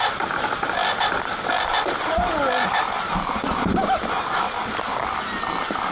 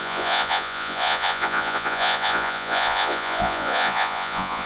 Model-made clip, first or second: second